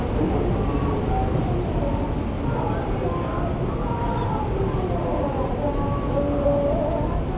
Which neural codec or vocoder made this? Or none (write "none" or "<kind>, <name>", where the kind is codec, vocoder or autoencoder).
none